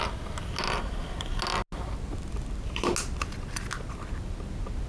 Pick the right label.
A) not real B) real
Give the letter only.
B